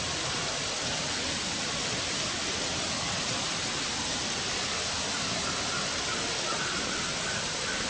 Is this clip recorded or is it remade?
recorded